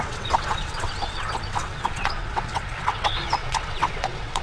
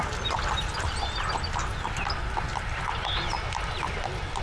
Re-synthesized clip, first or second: first